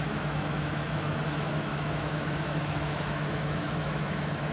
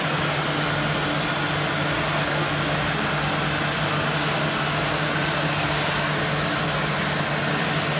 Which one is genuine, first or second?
second